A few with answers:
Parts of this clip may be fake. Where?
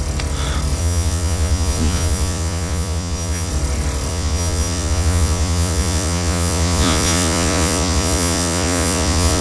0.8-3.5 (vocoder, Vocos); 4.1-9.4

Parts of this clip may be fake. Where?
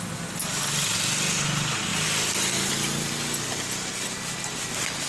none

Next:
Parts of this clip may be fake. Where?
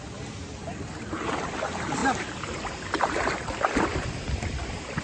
none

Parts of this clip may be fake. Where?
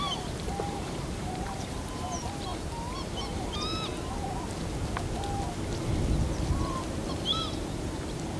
0.0-3.3 (vocoder, BigVGAN v2); 6.6-8.4